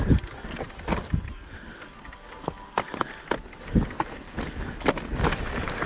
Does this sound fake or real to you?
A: real